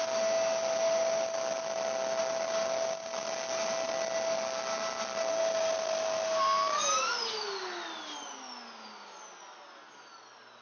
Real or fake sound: real